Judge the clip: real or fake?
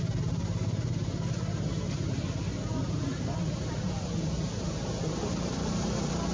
real